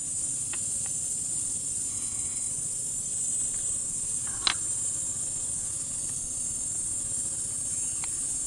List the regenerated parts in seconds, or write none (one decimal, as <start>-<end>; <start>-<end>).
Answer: 1.9-2.5